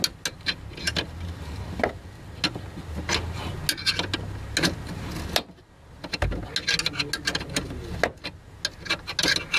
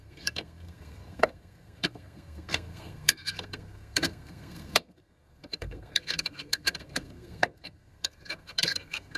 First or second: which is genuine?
first